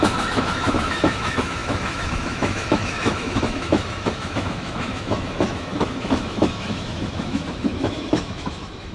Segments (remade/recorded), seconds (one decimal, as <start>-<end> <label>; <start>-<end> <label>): 0.0-8.9 remade